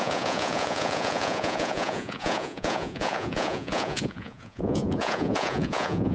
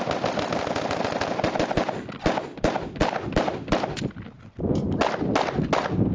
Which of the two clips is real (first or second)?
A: second